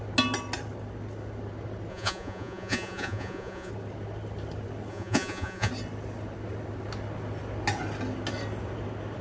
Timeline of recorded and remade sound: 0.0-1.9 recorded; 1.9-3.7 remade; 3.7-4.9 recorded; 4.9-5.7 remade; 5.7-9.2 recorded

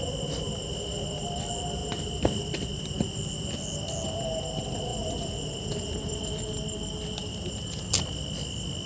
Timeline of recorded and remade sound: 0.0-8.9 recorded

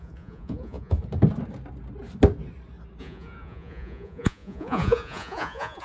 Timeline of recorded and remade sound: 0.0-1.0 remade; 1.0-3.0 recorded; 3.0-5.8 remade

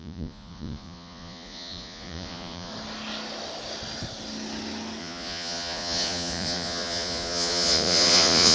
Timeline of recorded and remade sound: 0.0-2.7 remade; 2.7-5.0 recorded; 5.0-8.5 remade